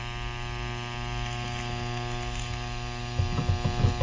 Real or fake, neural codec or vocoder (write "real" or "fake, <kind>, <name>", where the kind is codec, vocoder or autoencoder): real